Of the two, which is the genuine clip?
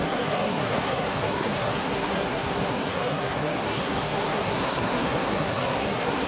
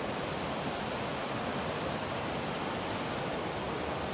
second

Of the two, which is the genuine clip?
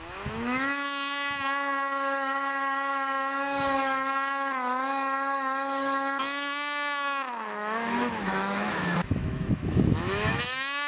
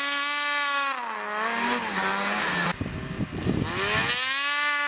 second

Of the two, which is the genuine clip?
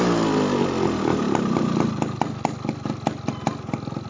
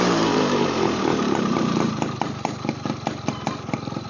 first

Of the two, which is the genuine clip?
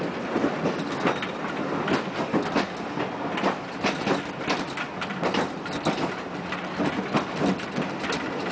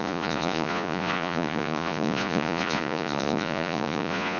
first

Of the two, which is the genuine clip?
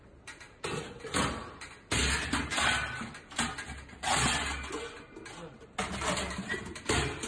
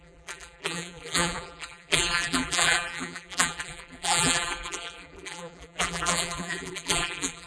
first